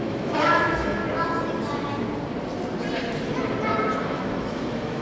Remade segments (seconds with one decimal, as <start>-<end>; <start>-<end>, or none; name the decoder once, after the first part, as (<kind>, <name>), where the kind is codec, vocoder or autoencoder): 0.0-1.0 (autoencoder, DAC-VAE); 4.0-5.0